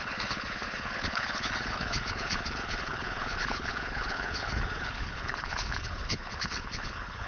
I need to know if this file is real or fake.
fake